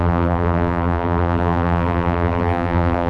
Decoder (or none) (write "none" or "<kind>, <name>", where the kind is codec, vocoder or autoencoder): vocoder, BigVGAN v2